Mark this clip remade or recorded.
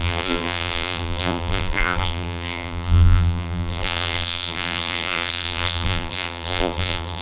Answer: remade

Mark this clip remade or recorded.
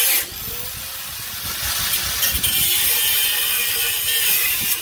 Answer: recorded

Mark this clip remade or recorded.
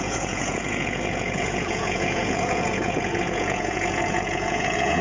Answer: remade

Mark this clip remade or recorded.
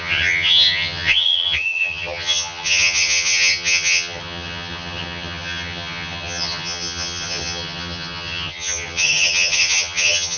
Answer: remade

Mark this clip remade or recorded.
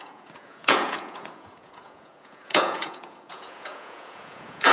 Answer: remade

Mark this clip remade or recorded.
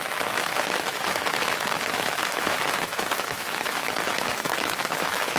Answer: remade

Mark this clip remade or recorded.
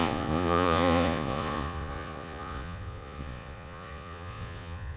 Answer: remade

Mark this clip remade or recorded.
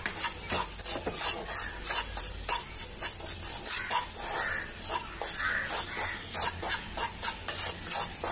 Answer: recorded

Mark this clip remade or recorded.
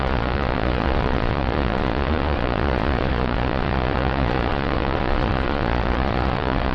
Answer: remade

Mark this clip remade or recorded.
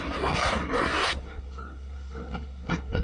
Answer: remade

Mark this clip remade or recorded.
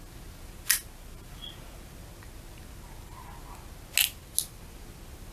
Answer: recorded